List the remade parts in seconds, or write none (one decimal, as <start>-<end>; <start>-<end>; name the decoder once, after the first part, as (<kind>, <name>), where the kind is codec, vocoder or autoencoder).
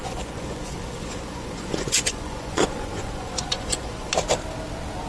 0.0-4.1 (vocoder, Vocos)